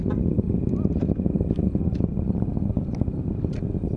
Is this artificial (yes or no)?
no